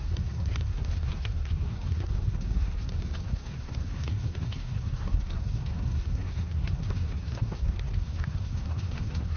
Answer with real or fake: fake